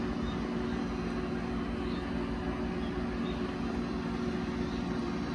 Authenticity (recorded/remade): recorded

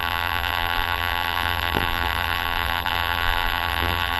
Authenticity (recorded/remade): remade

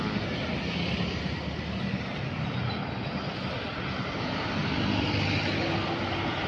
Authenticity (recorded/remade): recorded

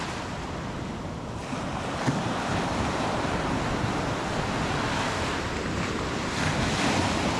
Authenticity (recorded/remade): recorded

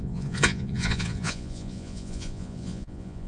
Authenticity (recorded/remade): remade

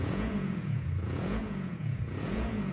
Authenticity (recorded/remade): remade